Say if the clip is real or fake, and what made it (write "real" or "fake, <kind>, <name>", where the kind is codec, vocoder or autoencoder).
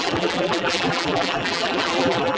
fake, vocoder, BigVGAN v2